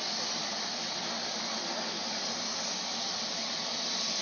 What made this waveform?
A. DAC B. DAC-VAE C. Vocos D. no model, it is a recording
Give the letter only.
D